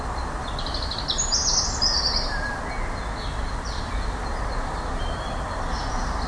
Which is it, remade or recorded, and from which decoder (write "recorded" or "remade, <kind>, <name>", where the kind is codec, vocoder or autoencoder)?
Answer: recorded